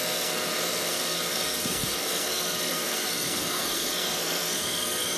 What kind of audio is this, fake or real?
fake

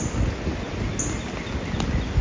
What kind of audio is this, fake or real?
real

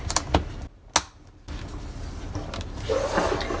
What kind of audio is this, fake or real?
real